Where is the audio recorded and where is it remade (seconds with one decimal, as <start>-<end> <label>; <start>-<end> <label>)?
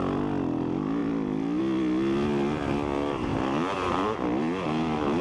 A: 0.0-5.2 recorded